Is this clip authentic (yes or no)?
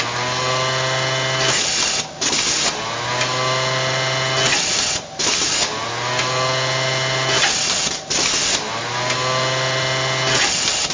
yes